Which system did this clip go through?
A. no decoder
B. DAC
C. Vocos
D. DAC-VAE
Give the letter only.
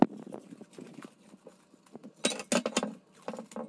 A